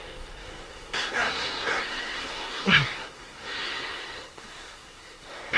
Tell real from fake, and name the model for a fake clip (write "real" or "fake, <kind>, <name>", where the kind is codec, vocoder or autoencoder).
fake, codec, SNAC